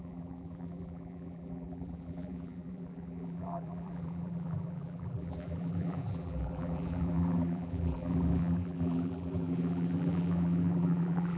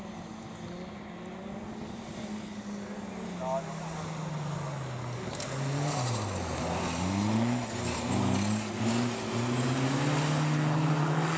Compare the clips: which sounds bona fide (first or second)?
second